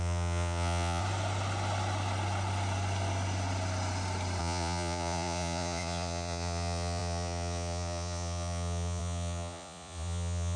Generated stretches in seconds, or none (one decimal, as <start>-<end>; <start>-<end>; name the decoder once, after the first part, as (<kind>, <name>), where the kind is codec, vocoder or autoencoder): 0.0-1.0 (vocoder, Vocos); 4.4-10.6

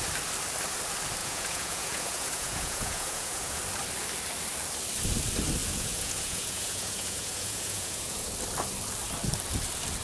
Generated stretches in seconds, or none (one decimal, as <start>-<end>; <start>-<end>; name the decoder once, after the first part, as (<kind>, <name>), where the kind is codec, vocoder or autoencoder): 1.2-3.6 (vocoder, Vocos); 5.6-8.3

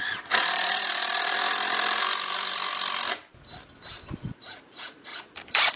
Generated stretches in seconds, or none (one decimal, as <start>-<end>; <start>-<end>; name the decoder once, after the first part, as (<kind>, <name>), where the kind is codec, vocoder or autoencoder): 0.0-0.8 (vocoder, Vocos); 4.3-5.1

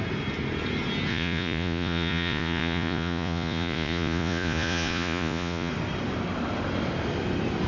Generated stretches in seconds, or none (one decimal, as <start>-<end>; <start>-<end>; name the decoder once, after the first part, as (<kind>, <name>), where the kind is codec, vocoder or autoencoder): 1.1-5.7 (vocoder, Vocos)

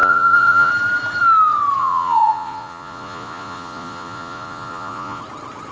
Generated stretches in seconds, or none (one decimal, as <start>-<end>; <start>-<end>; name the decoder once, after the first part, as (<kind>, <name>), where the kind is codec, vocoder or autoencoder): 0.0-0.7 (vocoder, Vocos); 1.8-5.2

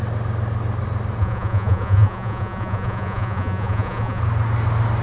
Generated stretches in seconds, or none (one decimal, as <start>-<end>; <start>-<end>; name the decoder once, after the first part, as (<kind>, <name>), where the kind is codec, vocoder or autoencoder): 1.2-4.2 (vocoder, Vocos)